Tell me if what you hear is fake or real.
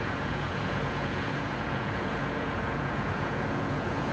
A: fake